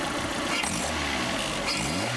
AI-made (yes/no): no